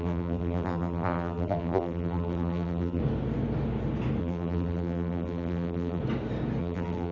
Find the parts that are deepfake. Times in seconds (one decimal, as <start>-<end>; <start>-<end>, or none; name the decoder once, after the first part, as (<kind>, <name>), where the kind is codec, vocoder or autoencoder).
0.0-3.0 (vocoder, BigVGAN v2); 4.2-6.0; 6.6-7.1